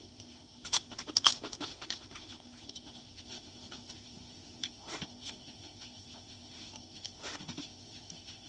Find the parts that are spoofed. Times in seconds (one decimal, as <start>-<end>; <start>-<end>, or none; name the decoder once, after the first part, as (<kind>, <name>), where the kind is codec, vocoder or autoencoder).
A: 0.0-8.5 (autoencoder, DAC-VAE)